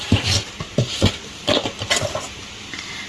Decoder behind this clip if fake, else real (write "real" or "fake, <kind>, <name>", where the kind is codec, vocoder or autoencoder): real